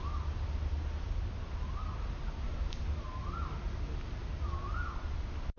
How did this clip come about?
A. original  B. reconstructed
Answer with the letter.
A